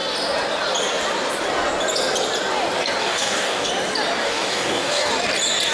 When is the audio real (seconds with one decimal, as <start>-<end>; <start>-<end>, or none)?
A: 0.0-3.0; 3.7-4.2; 5.1-5.7